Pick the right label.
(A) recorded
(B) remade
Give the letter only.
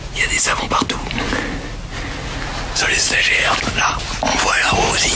A